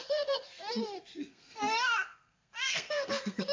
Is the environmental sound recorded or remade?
remade